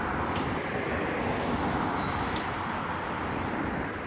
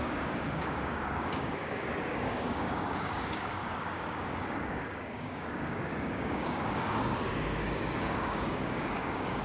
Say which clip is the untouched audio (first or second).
first